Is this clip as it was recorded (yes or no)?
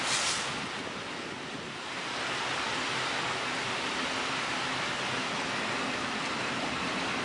yes